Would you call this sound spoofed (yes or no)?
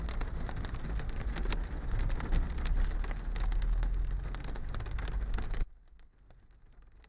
no